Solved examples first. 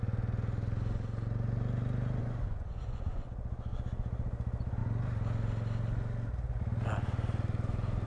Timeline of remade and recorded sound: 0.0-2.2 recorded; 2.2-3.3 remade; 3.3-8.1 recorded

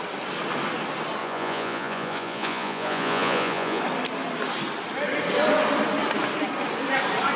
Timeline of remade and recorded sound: 0.0-1.2 recorded; 1.2-3.8 remade; 3.8-7.4 recorded

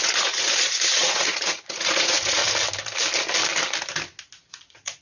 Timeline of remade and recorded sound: 0.0-2.4 remade; 2.4-4.5 recorded; 4.5-5.0 remade

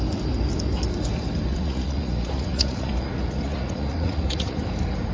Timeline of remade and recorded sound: 0.0-1.5 recorded; 1.5-4.6 remade; 4.6-5.1 recorded